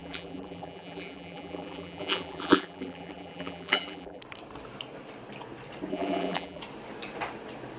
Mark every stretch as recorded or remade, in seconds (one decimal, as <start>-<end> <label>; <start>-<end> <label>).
0.0-4.2 remade; 4.2-5.9 recorded; 5.9-6.6 remade; 6.6-7.8 recorded